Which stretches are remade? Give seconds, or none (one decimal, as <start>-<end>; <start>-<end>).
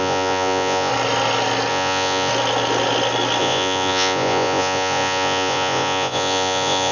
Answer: 0.0-0.9; 1.7-2.3; 3.4-6.9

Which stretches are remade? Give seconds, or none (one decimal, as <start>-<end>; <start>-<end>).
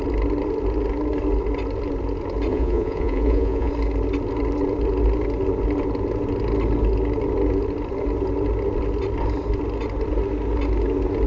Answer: 2.5-3.7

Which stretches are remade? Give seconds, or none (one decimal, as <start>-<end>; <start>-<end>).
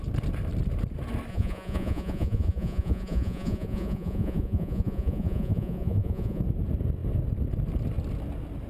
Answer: 1.3-6.4